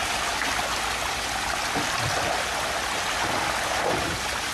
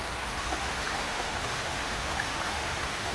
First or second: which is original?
first